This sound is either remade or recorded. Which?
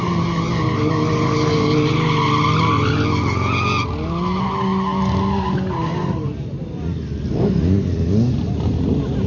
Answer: recorded